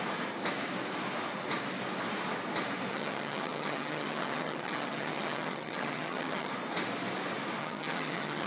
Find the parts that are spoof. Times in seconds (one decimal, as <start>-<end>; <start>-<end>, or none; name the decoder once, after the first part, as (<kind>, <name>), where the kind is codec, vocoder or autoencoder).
2.9-6.5 (vocoder, HiFi-GAN); 7.6-8.5